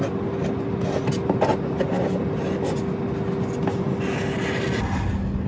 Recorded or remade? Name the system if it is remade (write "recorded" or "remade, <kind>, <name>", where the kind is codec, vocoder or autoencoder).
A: recorded